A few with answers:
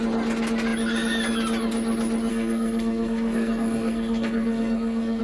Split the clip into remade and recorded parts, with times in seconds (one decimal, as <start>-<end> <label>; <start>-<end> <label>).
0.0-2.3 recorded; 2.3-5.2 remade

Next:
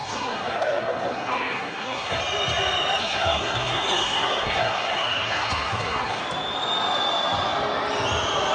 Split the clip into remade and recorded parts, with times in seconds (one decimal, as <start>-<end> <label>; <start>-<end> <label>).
0.0-2.2 remade; 2.2-3.0 recorded; 3.0-6.2 remade; 6.2-8.5 recorded

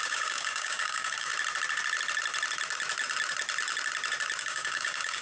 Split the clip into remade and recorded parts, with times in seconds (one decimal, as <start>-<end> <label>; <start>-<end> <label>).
0.0-1.3 remade; 1.3-4.4 recorded; 4.4-5.2 remade

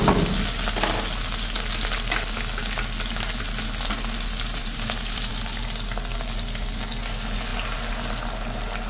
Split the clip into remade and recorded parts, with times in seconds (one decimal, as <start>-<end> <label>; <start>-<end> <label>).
0.0-4.6 recorded; 4.6-5.3 remade; 5.3-8.9 recorded

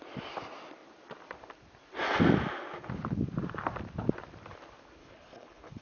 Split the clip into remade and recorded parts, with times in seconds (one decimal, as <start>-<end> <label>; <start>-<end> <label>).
0.0-5.0 recorded; 5.0-5.8 remade